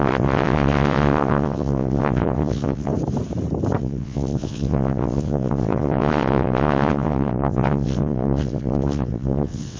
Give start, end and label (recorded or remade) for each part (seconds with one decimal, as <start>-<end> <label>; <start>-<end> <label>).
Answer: 0.0-2.9 remade; 2.9-3.8 recorded; 3.8-9.8 remade